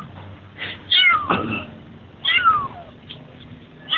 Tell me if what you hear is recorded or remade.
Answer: recorded